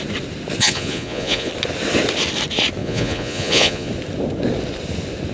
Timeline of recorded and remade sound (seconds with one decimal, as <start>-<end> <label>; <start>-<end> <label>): 0.0-0.6 recorded; 0.6-1.5 remade; 1.5-2.8 recorded; 2.8-3.9 remade; 3.9-5.3 recorded